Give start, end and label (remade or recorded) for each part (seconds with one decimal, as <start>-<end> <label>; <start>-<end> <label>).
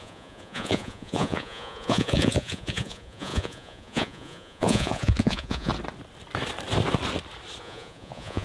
0.0-5.7 remade; 5.7-7.6 recorded; 7.6-8.4 remade